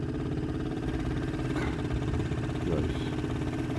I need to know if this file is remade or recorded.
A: recorded